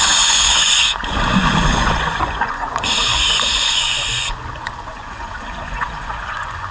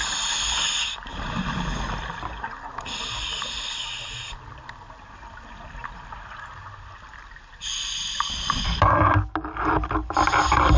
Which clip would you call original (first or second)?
second